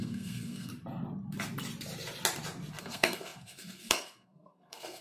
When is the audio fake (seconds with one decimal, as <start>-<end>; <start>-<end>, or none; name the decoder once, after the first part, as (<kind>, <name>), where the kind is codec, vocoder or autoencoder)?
0.0-0.7 (codec, SNAC); 2.8-5.0